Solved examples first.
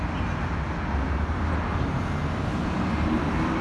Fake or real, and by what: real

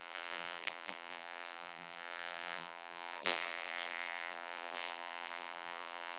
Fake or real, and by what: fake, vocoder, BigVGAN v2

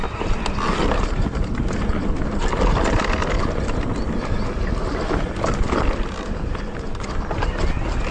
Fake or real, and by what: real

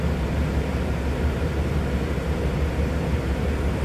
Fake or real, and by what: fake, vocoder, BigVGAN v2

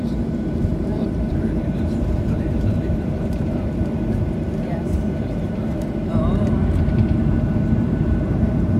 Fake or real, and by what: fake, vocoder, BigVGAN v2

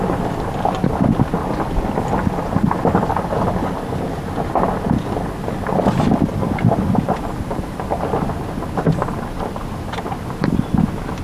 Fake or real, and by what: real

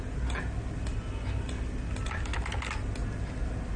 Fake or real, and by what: real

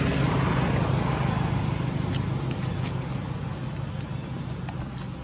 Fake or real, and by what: real